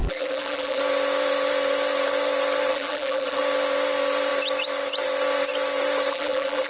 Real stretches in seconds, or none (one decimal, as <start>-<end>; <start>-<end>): 0.8-2.7; 3.4-6.1